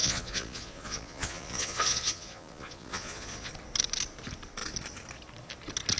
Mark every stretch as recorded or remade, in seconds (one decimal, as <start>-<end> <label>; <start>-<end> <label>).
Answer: 0.0-3.5 remade; 3.5-6.0 recorded